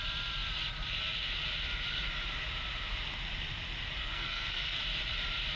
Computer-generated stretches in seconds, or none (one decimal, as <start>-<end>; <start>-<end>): 4.0-4.8